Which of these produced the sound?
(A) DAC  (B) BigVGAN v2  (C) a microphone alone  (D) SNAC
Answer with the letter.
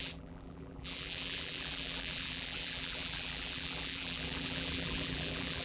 B